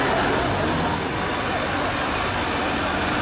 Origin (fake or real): real